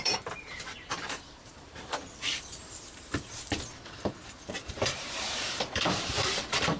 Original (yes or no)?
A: no